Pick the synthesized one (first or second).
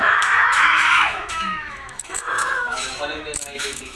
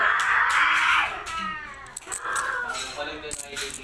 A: first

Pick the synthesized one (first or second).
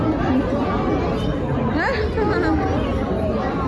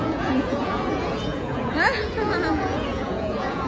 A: second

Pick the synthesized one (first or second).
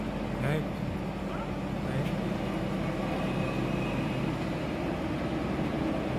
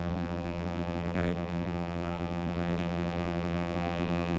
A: second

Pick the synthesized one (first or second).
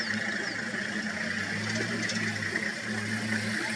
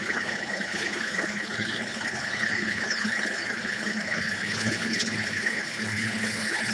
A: second